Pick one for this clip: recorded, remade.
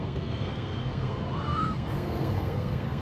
remade